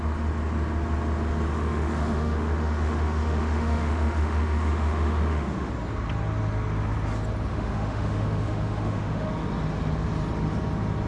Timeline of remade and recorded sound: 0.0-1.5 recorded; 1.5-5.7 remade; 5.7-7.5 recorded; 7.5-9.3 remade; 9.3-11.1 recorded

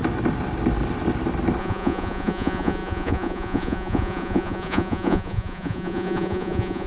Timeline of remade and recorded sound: 0.0-1.6 recorded; 1.6-6.9 remade

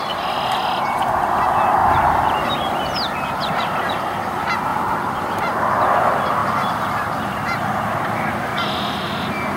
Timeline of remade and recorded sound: 0.0-1.8 recorded; 1.8-2.6 remade; 2.6-4.7 recorded; 4.7-5.8 remade; 5.8-9.6 recorded

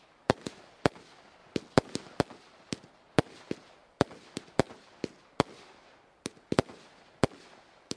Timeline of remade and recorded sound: 0.0-1.4 recorded; 1.4-2.2 remade; 2.2-3.8 recorded; 3.8-4.9 remade; 4.9-8.0 recorded

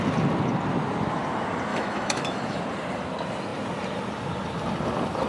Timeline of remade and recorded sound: 0.0-1.7 recorded; 1.7-2.6 remade; 2.6-5.3 recorded

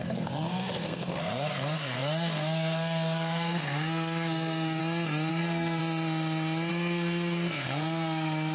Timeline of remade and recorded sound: 0.0-4.8 remade; 4.8-5.3 recorded; 5.3-5.8 remade; 5.8-6.7 recorded; 6.7-8.5 remade

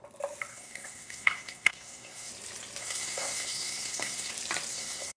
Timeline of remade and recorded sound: 0.0-0.5 recorded; 0.5-2.3 remade; 2.3-2.8 recorded; 2.8-4.3 remade; 4.3-4.7 recorded; 4.7-5.2 remade